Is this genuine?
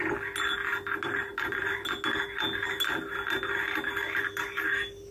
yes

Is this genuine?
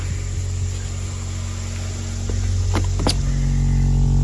yes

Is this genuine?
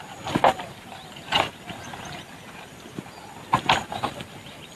yes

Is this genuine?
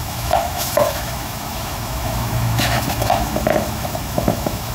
no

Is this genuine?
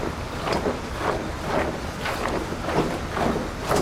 yes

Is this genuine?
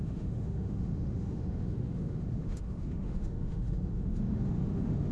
no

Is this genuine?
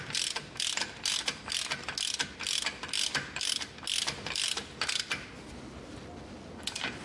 yes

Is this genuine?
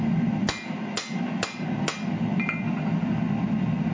yes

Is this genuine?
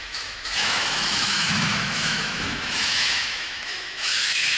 no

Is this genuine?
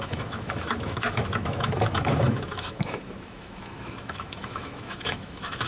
no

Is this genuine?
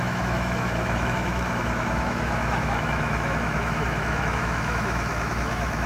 no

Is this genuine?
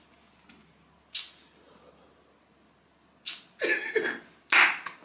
yes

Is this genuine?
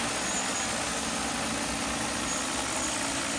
yes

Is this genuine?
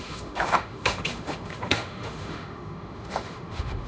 no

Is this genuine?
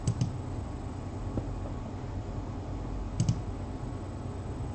yes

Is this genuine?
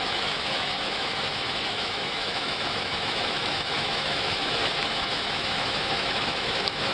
no